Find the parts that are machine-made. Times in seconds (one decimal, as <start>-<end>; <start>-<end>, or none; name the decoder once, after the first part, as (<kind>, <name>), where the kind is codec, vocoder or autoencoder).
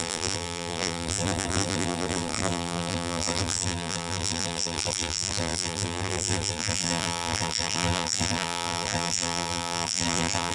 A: 0.0-10.5 (vocoder, BigVGAN v2)